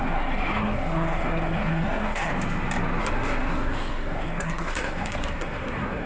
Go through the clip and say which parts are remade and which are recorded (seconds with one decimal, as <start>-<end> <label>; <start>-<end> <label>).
0.0-2.3 remade; 2.3-3.0 recorded; 3.0-6.1 remade